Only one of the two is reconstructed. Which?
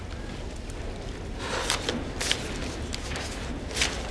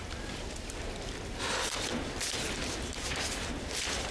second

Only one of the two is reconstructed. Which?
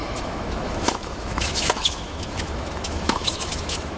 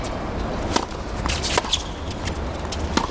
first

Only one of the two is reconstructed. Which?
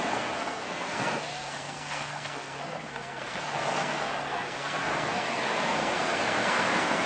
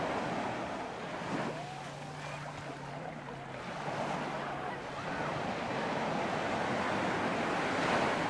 first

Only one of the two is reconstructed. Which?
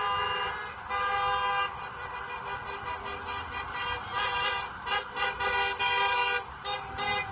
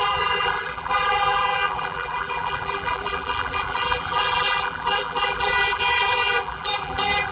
second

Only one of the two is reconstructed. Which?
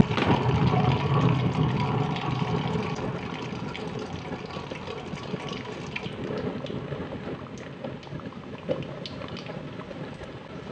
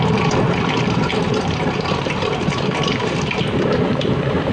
second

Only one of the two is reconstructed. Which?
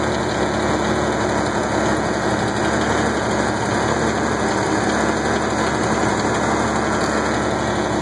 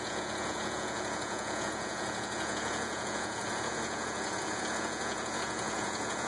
second